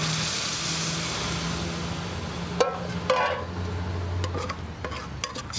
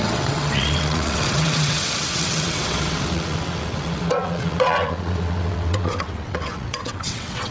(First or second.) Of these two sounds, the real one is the first